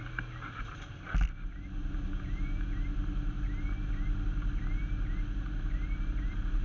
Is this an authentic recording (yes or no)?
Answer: yes